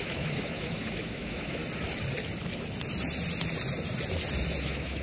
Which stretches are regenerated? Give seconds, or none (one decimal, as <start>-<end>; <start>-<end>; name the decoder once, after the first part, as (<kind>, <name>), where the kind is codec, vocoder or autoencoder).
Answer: 0.0-1.6 (autoencoder, DAC-VAE); 4.6-5.0